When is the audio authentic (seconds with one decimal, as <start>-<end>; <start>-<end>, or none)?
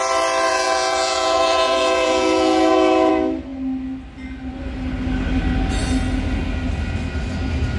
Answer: 0.0-0.5; 3.1-7.8